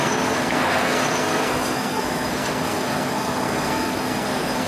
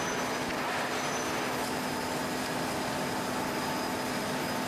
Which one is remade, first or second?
first